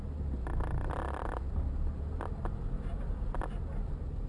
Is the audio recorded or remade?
recorded